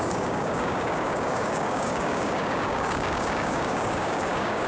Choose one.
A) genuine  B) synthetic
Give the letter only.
B